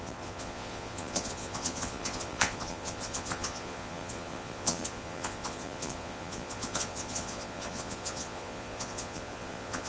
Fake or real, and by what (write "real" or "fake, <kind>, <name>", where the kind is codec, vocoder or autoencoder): fake, vocoder, Vocos